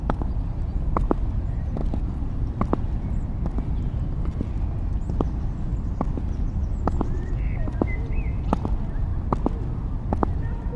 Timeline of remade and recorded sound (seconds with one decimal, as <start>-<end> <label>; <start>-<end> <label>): 0.0-0.7 recorded; 0.7-1.4 remade; 1.4-1.8 recorded; 1.8-2.7 remade; 2.7-10.8 recorded